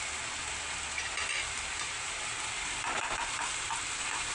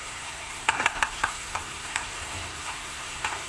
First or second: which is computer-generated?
second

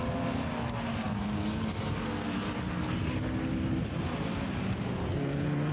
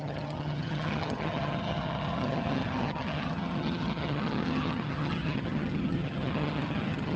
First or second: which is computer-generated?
second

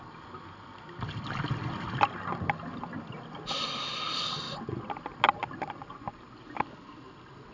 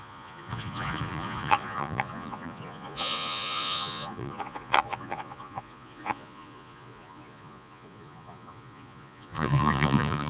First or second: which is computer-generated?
second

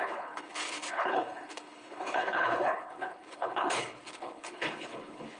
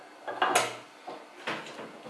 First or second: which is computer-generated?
first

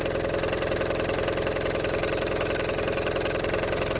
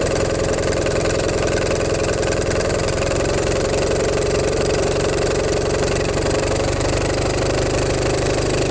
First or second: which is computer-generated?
second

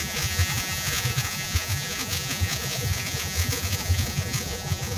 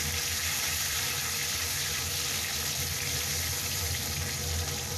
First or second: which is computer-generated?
first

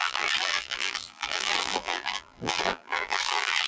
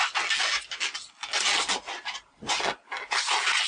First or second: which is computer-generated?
first